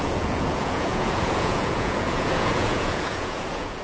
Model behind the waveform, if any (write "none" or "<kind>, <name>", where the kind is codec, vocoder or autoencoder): vocoder, Vocos